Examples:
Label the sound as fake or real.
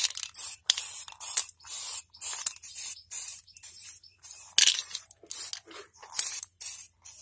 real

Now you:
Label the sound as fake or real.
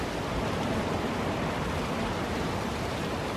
real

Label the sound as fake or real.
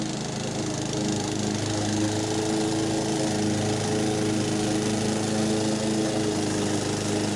real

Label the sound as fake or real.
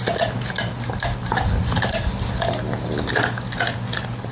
real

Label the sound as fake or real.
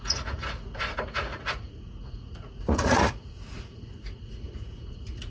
fake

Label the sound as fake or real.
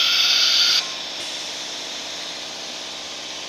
real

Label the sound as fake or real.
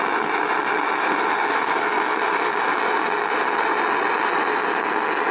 real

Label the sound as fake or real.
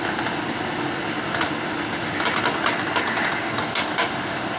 real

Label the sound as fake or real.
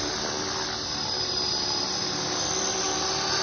real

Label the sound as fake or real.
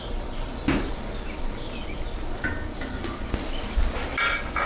real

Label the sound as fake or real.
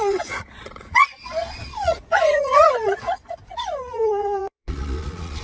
fake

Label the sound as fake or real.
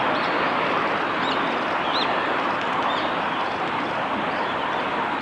real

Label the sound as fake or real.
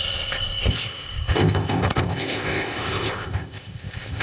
fake